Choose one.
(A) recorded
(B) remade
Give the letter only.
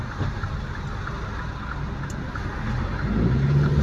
A